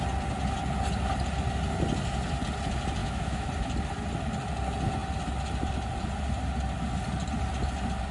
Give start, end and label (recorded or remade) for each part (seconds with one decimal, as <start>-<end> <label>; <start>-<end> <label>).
0.0-3.0 recorded; 3.0-3.5 remade; 3.5-8.1 recorded